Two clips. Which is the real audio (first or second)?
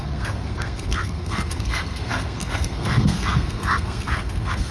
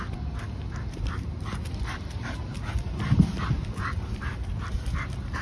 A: second